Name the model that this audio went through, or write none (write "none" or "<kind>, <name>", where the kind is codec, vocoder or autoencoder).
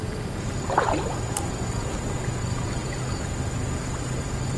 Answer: none